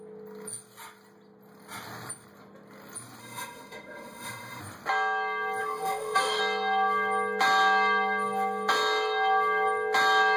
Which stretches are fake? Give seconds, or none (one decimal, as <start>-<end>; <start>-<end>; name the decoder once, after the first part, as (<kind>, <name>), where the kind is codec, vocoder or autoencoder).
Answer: 3.2-4.6 (autoencoder, DAC-VAE); 5.6-6.4